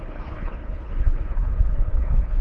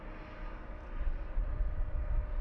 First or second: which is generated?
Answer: first